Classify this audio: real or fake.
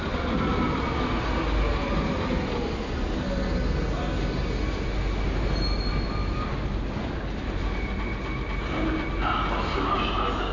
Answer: real